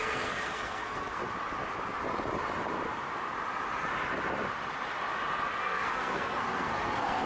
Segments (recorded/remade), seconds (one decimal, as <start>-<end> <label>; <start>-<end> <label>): 0.0-1.2 remade; 1.2-5.6 recorded; 5.6-7.3 remade